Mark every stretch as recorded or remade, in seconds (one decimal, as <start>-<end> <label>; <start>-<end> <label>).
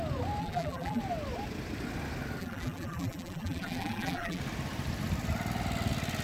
0.0-0.4 recorded; 0.4-1.0 remade; 1.0-2.4 recorded; 2.4-4.4 remade; 4.4-6.2 recorded